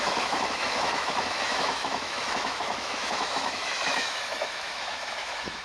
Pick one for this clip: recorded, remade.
remade